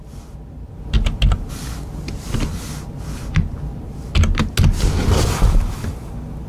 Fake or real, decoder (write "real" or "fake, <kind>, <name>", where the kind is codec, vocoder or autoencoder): real